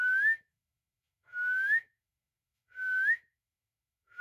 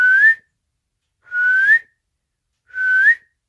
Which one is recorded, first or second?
second